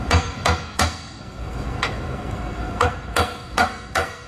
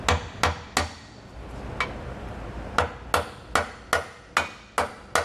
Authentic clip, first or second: second